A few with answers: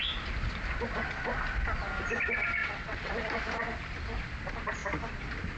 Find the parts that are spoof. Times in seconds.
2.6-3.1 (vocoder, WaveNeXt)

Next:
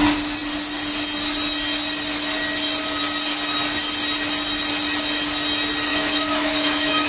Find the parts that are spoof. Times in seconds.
5.9-7.1 (autoencoder, DAC-VAE)

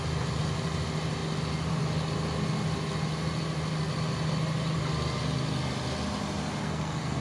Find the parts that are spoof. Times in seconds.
6.6-7.2 (codec, SNAC)

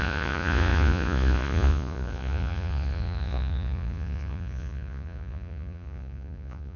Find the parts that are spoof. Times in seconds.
0.0-6.8 (vocoder, Vocos)

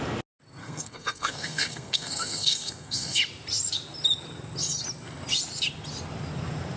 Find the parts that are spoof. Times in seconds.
0.6-3.2 (codec, SNAC)

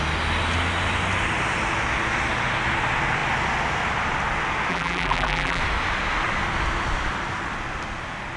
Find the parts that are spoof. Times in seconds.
4.7-5.6 (vocoder, BigVGAN v2)

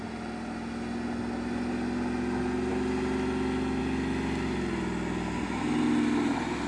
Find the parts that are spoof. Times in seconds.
none

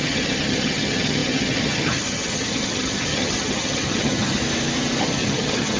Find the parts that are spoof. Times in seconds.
0.0-4.4 (vocoder, HiFi-GAN); 5.0-5.8